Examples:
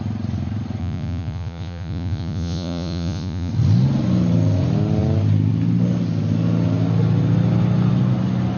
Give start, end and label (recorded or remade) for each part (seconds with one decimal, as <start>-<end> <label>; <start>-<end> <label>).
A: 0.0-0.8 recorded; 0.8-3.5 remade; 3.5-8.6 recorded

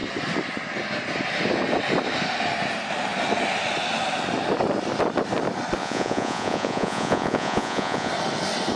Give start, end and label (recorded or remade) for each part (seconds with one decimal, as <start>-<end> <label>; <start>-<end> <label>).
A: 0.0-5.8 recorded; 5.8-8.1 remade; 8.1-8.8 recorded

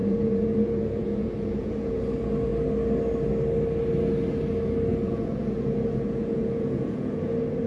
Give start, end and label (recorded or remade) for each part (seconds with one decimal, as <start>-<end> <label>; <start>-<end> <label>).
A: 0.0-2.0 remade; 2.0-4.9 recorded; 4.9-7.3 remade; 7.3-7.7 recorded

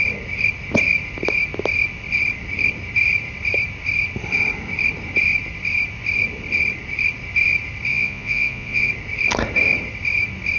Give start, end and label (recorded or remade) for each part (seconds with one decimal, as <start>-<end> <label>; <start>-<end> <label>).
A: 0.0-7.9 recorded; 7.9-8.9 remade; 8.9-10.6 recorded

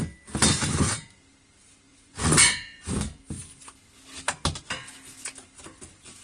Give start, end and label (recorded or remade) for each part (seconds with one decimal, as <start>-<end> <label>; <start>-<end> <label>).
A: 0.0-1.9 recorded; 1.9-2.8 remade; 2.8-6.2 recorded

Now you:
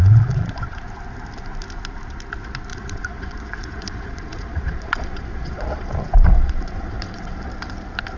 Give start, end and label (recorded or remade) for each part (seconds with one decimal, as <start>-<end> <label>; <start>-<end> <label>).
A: 0.0-0.8 remade; 0.8-2.7 recorded; 2.7-7.5 remade; 7.5-8.2 recorded

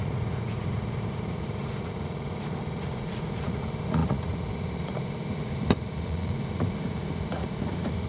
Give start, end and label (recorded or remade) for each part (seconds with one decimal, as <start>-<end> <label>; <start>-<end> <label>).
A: 0.0-8.1 remade